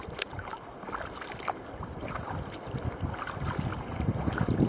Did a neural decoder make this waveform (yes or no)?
yes